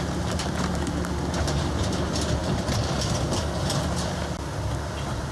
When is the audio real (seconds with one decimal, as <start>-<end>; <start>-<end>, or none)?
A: 0.0-2.4; 4.1-5.3